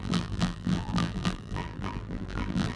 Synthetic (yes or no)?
yes